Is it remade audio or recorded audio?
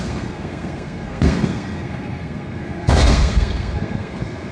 remade